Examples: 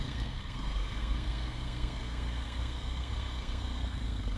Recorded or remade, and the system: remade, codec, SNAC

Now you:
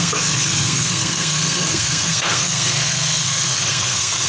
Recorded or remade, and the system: remade, codec, SNAC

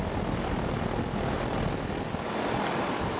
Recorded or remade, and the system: recorded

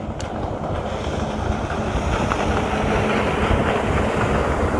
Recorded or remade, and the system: recorded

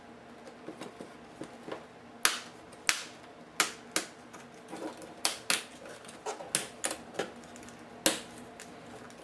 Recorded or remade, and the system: recorded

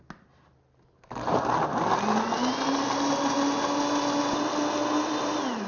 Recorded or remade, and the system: recorded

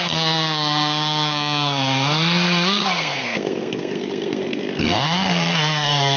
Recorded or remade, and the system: remade, codec, SNAC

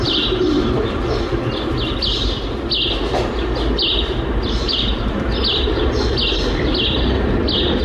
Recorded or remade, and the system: recorded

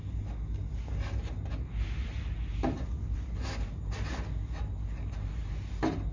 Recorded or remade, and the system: recorded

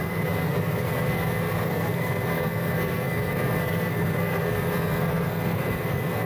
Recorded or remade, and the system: remade, codec, SNAC